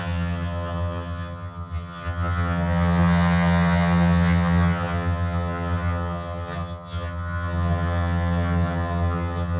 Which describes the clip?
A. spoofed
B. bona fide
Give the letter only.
A